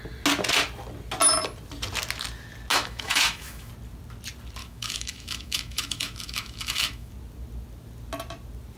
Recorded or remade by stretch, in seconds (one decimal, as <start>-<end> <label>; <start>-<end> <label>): 0.0-2.7 recorded; 2.7-3.7 remade; 3.7-4.6 recorded; 4.6-7.1 remade; 7.1-8.8 recorded